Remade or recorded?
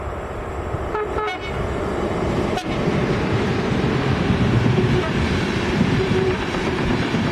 remade